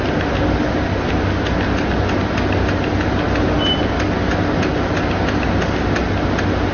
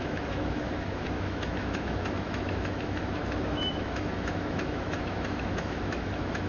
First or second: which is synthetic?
second